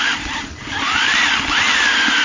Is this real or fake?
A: real